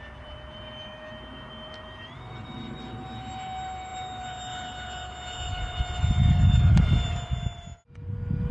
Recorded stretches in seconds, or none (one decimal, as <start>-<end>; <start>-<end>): 0.0-8.5